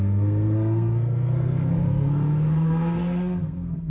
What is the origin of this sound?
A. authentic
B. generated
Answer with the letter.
B